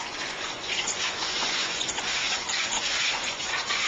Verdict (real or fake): fake